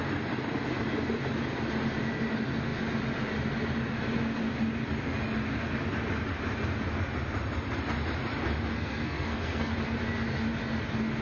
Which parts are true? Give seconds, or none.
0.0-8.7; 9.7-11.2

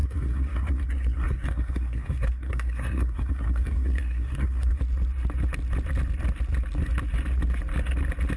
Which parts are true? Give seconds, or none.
4.8-8.4

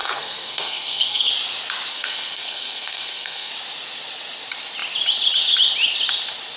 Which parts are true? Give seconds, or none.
1.3-1.9; 3.5-6.6